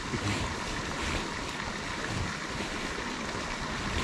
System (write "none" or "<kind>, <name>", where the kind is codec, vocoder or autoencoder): none